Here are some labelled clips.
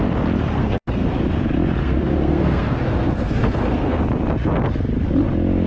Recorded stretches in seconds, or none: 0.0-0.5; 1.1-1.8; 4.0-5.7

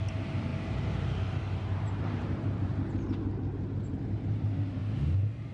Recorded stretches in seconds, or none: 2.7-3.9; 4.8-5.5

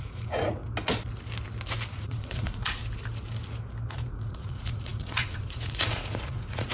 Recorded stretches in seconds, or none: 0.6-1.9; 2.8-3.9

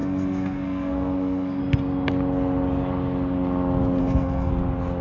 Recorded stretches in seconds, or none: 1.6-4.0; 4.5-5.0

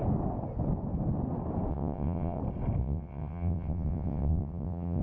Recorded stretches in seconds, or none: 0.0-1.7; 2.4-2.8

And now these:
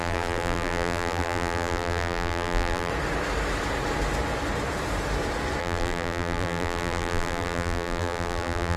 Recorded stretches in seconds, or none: 2.9-5.6

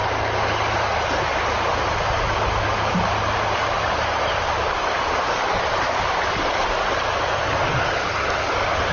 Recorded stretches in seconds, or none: 0.0-3.6; 5.3-8.9